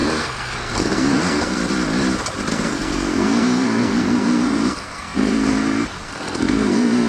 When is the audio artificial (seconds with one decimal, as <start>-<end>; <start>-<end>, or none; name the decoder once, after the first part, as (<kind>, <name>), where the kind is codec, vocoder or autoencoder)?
0.0-1.6 (codec, SNAC); 2.5-7.1